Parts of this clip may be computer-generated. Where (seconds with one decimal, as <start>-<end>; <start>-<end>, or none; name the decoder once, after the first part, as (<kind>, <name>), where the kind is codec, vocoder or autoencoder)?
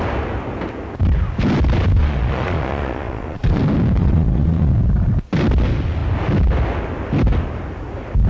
2.0-3.6 (vocoder, Vocos); 4.0-4.7